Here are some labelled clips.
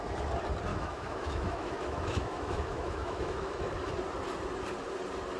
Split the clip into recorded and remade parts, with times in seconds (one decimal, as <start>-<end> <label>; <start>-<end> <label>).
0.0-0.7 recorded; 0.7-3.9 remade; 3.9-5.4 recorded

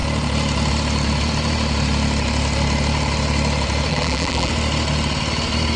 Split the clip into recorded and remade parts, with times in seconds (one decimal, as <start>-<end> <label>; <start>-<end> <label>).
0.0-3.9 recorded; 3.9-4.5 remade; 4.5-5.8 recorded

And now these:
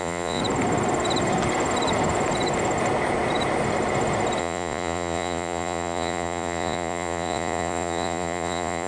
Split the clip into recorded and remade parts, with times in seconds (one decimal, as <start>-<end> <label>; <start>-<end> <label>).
0.0-0.4 remade; 0.4-4.4 recorded; 4.4-8.9 remade